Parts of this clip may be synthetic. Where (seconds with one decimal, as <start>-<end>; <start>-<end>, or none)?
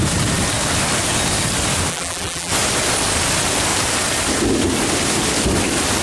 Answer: 1.9-2.5